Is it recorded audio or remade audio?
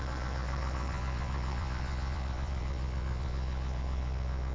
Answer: remade